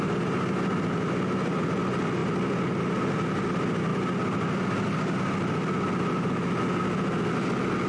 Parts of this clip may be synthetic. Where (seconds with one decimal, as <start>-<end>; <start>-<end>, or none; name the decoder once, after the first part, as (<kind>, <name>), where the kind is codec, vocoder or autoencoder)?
none